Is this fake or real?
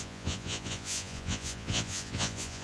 fake